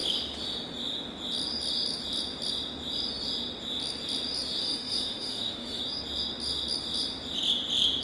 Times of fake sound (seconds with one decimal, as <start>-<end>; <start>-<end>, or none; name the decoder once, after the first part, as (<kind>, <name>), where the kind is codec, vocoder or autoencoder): 4.6-5.8 (autoencoder, DAC-VAE)